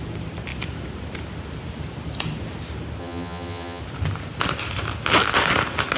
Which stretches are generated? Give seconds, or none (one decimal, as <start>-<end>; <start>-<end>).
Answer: 3.0-3.8